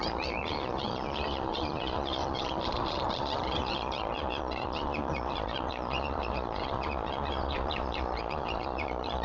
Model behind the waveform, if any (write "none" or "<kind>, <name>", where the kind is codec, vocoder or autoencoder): vocoder, Vocos